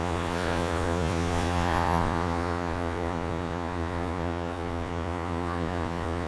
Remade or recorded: remade